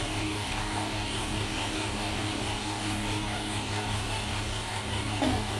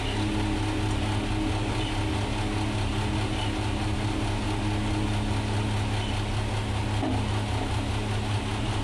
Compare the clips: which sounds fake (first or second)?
first